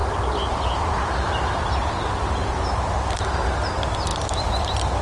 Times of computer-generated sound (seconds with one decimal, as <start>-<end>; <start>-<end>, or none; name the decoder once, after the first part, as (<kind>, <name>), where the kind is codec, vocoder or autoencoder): none